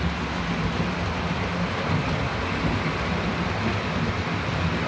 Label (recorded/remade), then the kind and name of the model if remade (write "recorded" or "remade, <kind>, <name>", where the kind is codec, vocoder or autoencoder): recorded